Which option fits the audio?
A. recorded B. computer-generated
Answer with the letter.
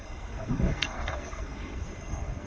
B